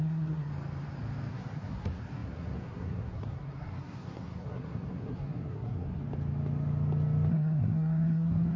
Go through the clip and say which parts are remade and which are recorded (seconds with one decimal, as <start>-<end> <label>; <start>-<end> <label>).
0.0-0.5 remade; 0.5-1.3 recorded; 1.3-6.0 remade; 6.0-7.3 recorded; 7.3-8.6 remade